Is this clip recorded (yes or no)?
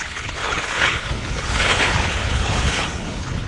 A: no